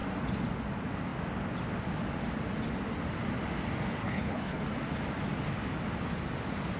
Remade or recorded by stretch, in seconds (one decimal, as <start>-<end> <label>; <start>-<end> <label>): 0.0-4.0 recorded; 4.0-4.6 remade; 4.6-6.8 recorded